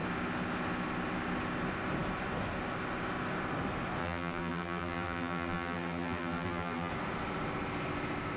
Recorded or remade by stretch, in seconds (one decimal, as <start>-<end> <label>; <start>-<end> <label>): 0.0-4.0 recorded; 4.0-6.9 remade; 6.9-8.4 recorded